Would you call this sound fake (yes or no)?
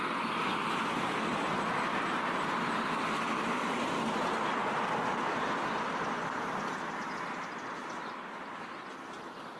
no